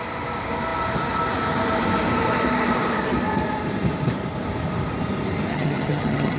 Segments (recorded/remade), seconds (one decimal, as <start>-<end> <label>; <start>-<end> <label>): 0.0-5.5 recorded; 5.5-6.4 remade

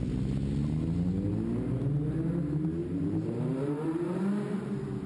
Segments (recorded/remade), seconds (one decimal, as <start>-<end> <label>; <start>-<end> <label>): 0.0-2.8 recorded; 2.8-4.2 remade; 4.2-5.1 recorded

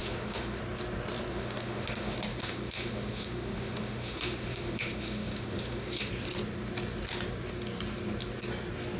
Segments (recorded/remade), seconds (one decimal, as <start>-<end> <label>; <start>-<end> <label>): 0.0-0.6 remade; 0.6-1.3 recorded; 1.3-6.1 remade; 6.1-9.0 recorded

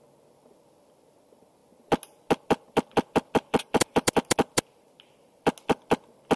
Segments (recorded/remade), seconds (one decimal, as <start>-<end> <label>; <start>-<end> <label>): 0.0-6.4 recorded

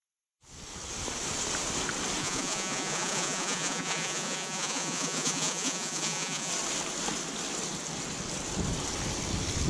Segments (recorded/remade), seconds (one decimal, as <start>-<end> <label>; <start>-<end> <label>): 0.0-2.2 recorded; 2.2-6.5 remade; 6.5-9.7 recorded